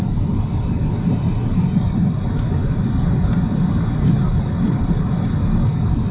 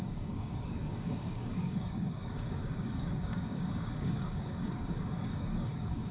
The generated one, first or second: second